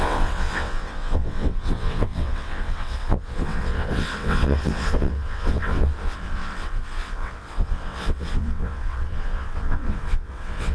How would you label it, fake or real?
fake